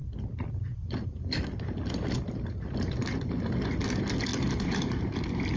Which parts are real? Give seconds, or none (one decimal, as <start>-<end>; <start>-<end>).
2.5-5.6